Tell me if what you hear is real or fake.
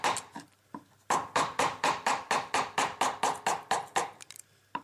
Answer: real